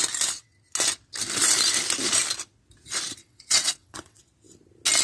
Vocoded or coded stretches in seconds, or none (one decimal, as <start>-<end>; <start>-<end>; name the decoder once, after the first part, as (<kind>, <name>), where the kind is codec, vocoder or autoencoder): 3.2-4.2 (vocoder, WaveNeXt)